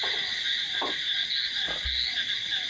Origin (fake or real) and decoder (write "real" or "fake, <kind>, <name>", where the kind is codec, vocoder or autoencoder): real